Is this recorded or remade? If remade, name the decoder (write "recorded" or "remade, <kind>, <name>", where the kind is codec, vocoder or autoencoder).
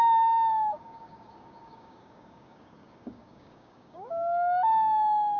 remade, codec, DAC